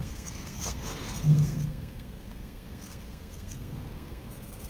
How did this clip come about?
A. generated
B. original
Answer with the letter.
A